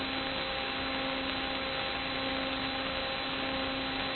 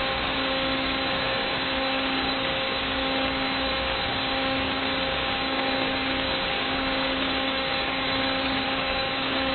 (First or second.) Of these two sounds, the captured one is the first